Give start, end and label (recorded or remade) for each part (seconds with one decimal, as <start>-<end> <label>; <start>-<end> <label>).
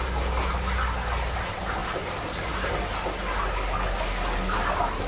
0.0-1.8 recorded; 1.8-2.5 remade; 2.5-5.1 recorded